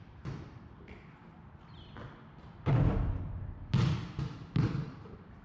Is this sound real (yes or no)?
yes